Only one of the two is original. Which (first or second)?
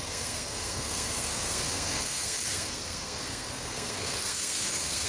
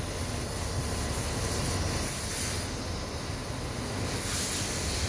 second